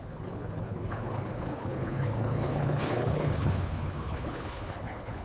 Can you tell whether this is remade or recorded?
remade